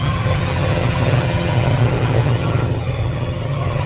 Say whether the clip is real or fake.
fake